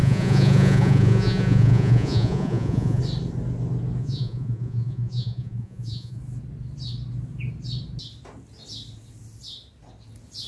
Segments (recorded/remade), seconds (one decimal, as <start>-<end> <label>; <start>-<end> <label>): 0.0-3.0 remade; 3.0-4.0 recorded; 4.0-6.2 remade; 6.2-10.5 recorded